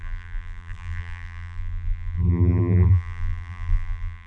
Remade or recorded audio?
remade